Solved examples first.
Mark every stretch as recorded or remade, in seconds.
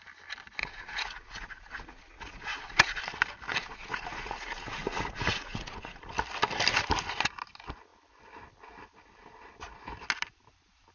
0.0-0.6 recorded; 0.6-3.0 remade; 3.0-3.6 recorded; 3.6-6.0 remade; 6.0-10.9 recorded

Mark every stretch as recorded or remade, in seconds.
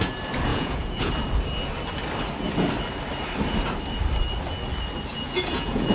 0.0-0.5 recorded; 0.5-1.1 remade; 1.1-5.1 recorded; 5.1-5.9 remade